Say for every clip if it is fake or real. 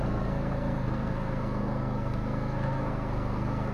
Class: fake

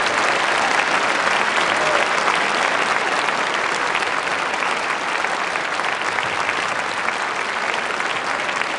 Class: real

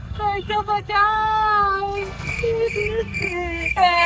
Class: fake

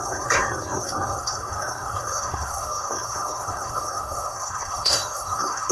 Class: fake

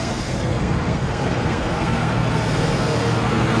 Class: fake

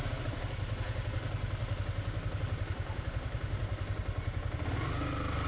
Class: real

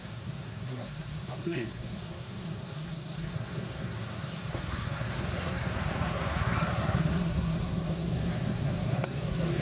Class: fake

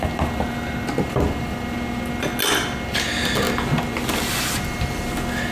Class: real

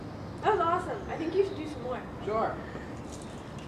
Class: real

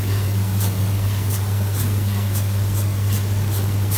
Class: fake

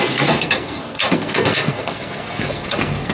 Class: fake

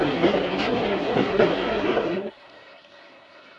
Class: fake